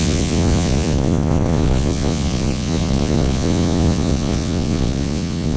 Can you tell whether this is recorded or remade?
remade